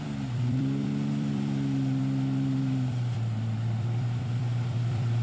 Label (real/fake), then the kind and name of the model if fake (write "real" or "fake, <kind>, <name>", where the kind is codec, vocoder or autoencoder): fake, vocoder, BigVGAN v2